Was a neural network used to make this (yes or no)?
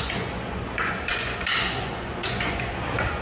yes